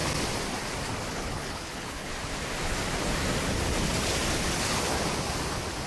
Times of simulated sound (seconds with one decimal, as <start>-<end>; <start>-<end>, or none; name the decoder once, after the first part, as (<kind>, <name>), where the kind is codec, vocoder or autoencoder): 1.1-2.1 (codec, HILCodec)